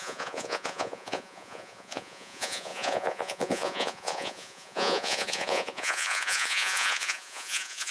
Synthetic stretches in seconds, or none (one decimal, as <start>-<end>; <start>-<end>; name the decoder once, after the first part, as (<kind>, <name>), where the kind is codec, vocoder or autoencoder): 0.0-7.9 (vocoder, Vocos)